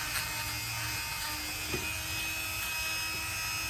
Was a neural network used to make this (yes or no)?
no